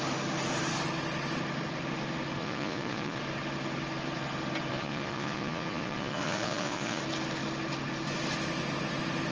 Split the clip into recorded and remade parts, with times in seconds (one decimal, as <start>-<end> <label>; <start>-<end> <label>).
0.0-2.4 recorded; 2.4-3.2 remade; 3.2-4.7 recorded; 4.7-7.0 remade; 7.0-9.3 recorded